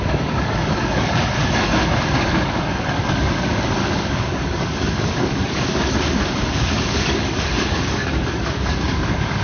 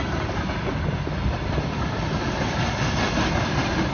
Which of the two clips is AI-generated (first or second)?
first